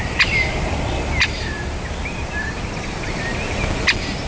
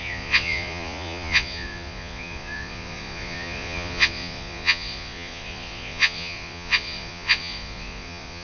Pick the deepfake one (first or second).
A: second